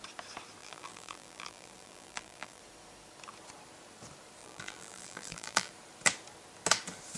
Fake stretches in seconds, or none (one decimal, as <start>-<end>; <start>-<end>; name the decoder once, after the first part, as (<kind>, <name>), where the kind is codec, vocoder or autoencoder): 0.6-2.6 (vocoder, BigVGAN v2); 4.4-5.7